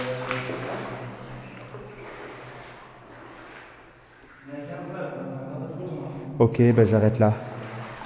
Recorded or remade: recorded